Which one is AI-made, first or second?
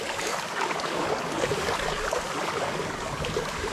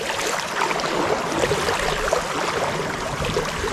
first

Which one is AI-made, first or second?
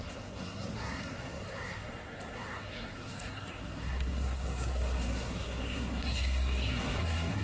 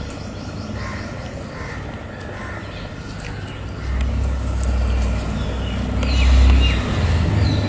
first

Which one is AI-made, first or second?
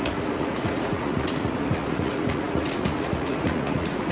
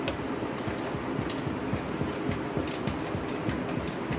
first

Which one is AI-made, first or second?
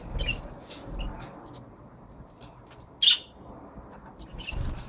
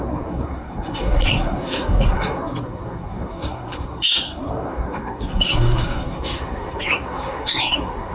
second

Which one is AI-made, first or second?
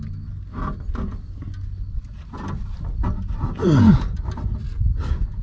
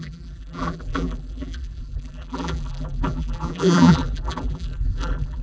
second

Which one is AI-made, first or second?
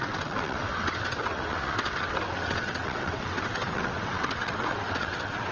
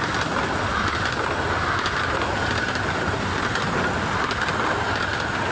first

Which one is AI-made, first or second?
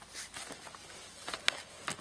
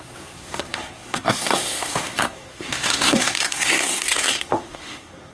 second